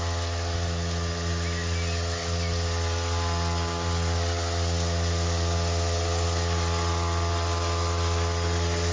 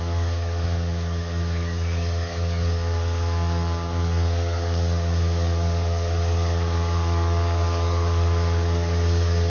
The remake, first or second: second